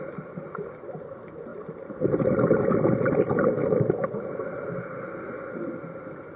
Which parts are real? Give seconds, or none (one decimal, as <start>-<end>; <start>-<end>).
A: 0.0-6.4